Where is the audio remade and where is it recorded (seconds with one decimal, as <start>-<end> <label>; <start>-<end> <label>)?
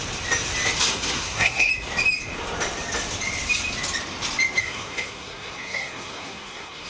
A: 0.0-0.8 recorded; 0.8-1.7 remade; 1.7-4.6 recorded; 4.6-6.9 remade